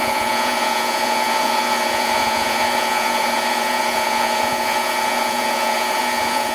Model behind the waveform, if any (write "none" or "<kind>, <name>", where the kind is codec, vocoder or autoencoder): vocoder, Vocos